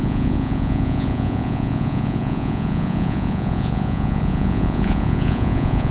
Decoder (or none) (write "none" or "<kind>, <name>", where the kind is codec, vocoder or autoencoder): vocoder, Vocos